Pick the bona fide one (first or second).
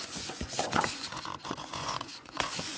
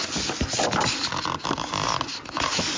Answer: second